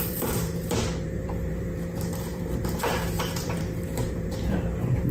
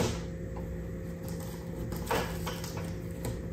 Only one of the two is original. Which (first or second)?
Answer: second